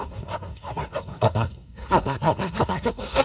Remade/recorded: remade